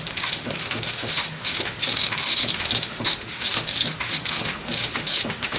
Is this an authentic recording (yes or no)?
no